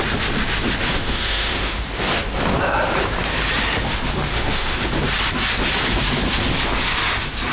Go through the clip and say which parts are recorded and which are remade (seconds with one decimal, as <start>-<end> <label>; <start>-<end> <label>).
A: 0.0-0.9 recorded; 0.9-1.8 remade; 1.8-4.3 recorded; 4.3-4.8 remade; 4.8-7.5 recorded